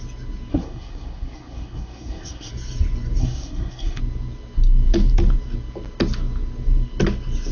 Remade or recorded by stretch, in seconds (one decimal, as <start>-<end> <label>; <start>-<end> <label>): 0.0-0.5 recorded; 0.5-2.5 remade; 2.5-3.2 recorded; 3.2-4.0 remade; 4.0-7.5 recorded